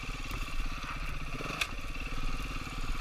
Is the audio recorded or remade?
recorded